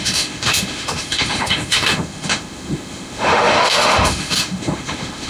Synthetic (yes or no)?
yes